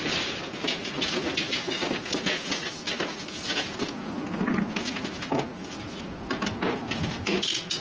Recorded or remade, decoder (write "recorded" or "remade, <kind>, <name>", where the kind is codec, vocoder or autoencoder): recorded